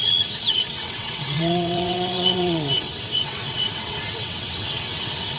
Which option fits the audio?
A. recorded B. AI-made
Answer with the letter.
B